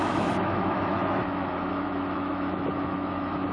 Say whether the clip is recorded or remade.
remade